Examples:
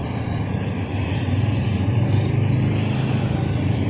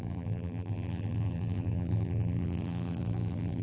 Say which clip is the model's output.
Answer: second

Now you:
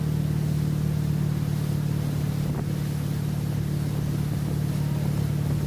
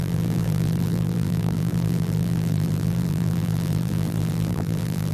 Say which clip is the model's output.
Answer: second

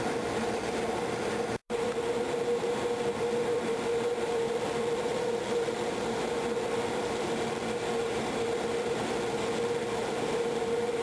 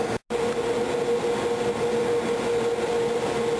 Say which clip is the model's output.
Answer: first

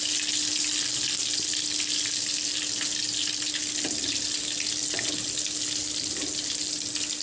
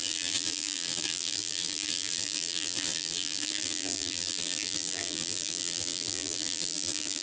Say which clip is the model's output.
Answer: second